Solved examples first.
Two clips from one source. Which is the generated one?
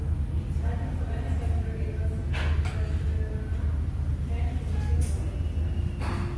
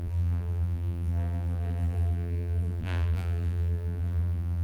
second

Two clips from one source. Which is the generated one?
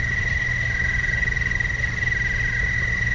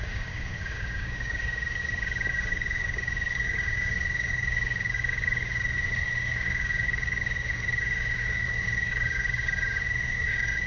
second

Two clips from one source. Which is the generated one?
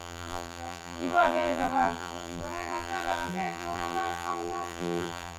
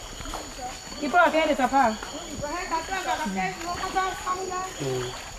first